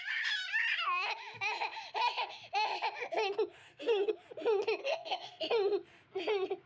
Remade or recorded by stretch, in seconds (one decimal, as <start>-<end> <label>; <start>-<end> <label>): 0.0-3.6 recorded; 3.6-4.1 remade; 4.1-4.8 recorded; 4.8-5.4 remade; 5.4-6.7 recorded

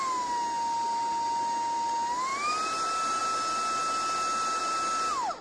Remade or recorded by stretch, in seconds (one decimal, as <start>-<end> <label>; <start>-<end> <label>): 0.0-5.4 recorded